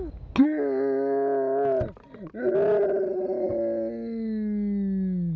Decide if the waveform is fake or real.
real